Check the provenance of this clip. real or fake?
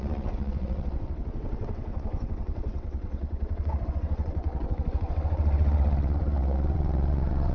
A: fake